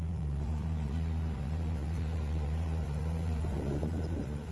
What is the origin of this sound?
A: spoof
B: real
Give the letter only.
A